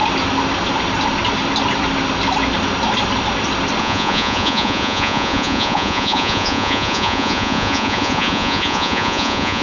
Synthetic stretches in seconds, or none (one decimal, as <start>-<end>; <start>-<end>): 3.8-9.6